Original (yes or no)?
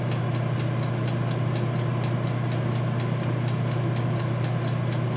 yes